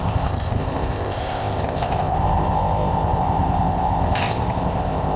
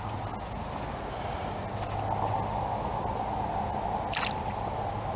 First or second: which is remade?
first